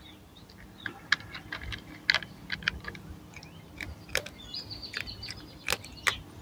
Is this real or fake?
real